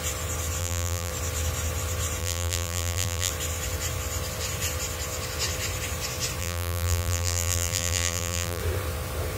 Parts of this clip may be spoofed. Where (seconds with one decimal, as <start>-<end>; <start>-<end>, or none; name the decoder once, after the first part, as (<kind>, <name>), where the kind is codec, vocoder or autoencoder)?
0.6-1.1 (vocoder, BigVGAN v2); 2.2-3.3; 6.4-8.6